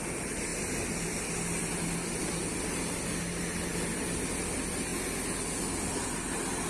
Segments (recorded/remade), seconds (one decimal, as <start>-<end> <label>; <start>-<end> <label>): 0.0-6.7 recorded